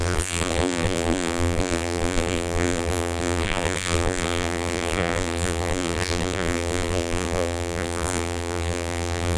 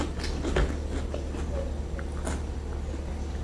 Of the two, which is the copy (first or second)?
first